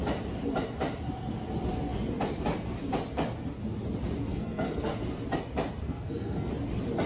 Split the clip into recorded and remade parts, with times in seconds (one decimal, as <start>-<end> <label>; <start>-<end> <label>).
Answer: 0.0-4.3 recorded; 4.3-4.9 remade; 4.9-5.8 recorded; 5.8-6.5 remade; 6.5-7.1 recorded